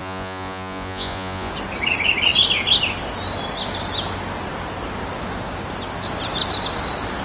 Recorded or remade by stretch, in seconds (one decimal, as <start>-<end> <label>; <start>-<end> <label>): 0.0-1.5 remade; 1.5-7.2 recorded